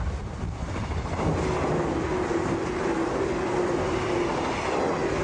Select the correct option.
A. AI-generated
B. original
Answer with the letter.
B